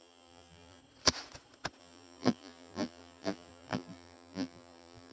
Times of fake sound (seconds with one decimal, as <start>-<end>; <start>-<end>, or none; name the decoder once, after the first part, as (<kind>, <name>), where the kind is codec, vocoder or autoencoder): 0.0-0.8 (vocoder, BigVGAN v2); 1.8-5.1